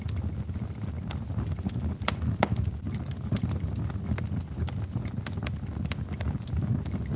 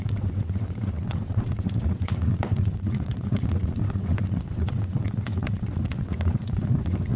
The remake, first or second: second